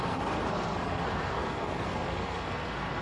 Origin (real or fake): fake